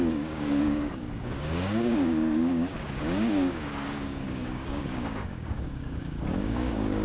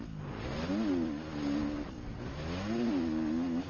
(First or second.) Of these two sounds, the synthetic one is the first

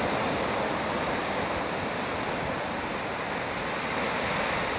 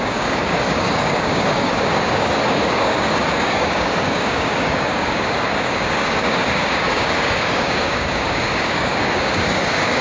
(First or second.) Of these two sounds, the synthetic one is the second